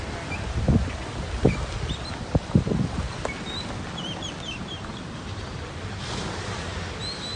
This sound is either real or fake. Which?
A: real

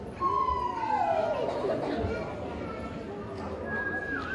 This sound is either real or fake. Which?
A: real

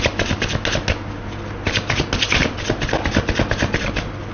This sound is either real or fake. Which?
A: real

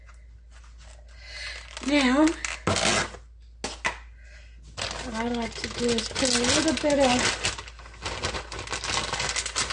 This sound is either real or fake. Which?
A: real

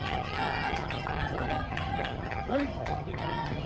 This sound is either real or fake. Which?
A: fake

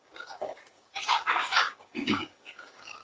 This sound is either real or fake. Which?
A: fake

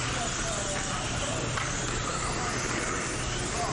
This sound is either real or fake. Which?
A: real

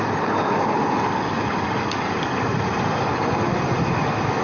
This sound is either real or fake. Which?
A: real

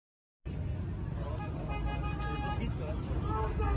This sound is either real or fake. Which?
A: real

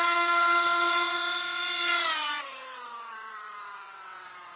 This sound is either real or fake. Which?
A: fake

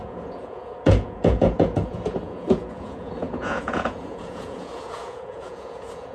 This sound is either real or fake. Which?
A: fake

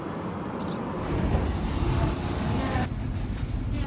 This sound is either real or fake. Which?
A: real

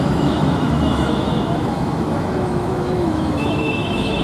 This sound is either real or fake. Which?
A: fake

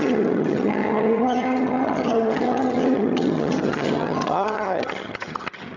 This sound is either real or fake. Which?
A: fake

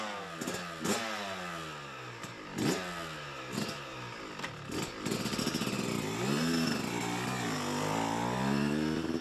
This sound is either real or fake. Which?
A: real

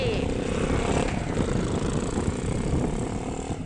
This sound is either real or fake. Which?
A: real